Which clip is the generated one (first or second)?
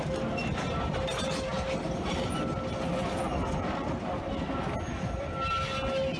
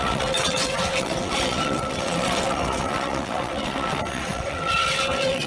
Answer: second